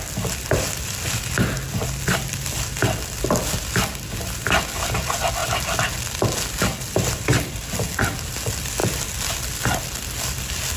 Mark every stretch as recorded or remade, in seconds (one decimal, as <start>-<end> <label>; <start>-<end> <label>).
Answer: 0.0-10.8 recorded